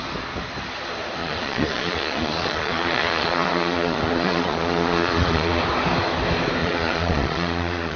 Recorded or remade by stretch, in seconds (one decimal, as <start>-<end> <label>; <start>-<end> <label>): 0.0-1.2 recorded; 1.2-5.6 remade; 5.6-6.6 recorded; 6.6-8.0 remade